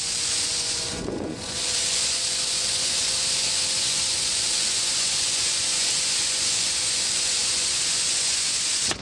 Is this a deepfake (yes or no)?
yes